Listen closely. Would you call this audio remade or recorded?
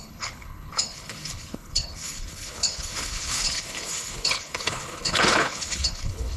remade